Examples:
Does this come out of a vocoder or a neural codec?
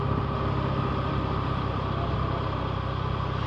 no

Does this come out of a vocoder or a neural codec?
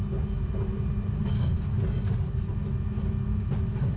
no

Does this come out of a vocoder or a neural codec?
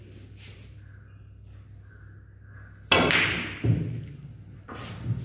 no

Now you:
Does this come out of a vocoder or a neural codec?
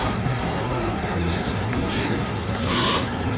yes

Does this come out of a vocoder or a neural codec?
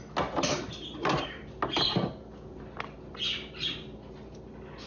no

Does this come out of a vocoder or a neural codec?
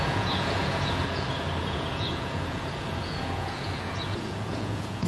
yes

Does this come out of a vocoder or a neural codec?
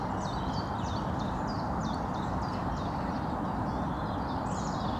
no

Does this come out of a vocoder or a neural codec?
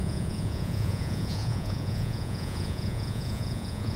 yes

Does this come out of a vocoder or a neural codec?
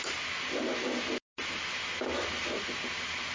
no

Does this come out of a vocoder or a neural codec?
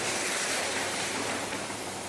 yes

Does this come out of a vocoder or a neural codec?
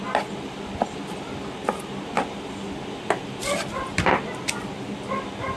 no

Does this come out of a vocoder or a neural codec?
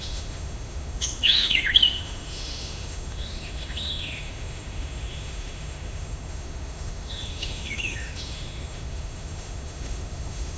yes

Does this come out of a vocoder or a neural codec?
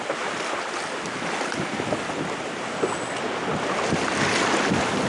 no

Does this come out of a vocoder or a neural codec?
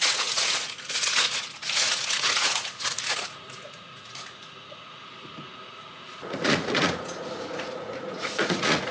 yes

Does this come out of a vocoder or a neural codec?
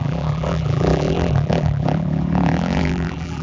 yes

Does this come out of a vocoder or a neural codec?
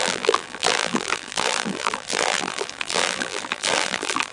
yes